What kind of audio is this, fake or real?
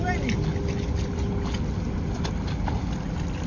real